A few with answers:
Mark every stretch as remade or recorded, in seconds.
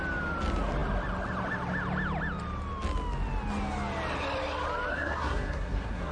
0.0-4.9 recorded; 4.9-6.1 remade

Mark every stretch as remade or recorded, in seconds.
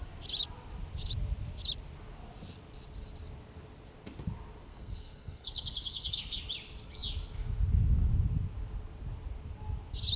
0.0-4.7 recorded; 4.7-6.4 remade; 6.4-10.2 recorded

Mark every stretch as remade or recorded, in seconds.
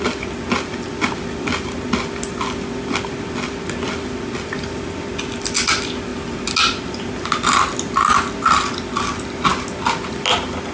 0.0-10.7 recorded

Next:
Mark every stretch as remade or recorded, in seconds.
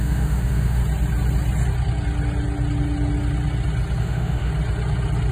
0.0-0.8 remade; 0.8-4.0 recorded; 4.0-4.5 remade; 4.5-5.3 recorded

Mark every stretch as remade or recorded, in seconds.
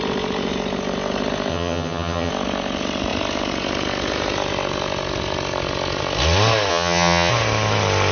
0.0-1.5 recorded; 1.5-2.3 remade; 2.3-6.7 recorded; 6.7-7.3 remade; 7.3-8.1 recorded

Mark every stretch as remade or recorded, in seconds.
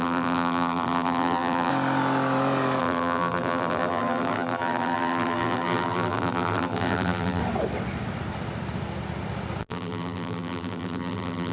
0.0-1.7 remade; 1.7-2.8 recorded; 2.8-7.4 remade; 7.4-9.6 recorded; 9.6-11.5 remade